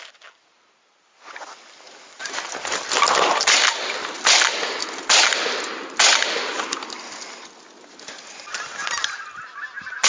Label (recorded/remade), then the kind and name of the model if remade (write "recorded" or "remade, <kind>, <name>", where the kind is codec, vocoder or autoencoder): recorded